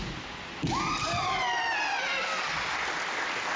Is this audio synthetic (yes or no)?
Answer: no